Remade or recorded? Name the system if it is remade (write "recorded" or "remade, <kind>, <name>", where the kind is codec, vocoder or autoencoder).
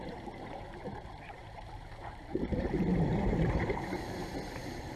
remade, vocoder, BigVGAN v2